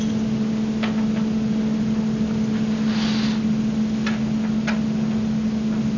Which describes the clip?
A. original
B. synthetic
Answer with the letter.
A